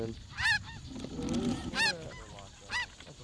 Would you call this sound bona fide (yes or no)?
yes